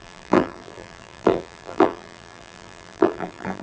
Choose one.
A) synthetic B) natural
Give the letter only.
A